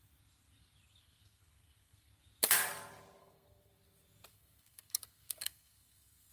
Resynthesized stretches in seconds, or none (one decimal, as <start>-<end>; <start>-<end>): 1.0-2.1; 3.2-3.7; 4.3-6.3